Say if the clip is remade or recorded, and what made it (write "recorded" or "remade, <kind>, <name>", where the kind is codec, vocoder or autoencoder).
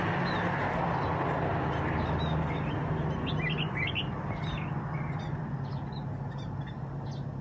recorded